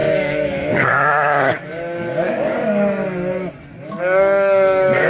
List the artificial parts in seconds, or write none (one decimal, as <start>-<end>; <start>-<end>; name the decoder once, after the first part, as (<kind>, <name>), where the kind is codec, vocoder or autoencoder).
0.0-3.0 (codec, DAC); 3.8-5.1